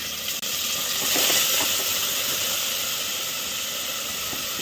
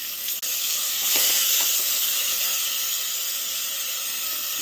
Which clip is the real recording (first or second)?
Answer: first